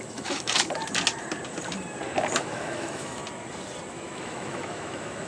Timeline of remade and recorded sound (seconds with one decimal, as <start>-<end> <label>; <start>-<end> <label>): 0.0-0.8 remade; 0.8-2.4 recorded; 2.4-3.2 remade; 3.2-3.9 recorded; 3.9-5.3 remade